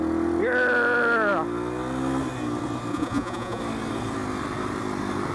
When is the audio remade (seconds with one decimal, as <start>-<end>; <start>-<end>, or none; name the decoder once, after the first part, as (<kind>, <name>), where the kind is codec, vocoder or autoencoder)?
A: 2.9-3.6 (vocoder, Vocos)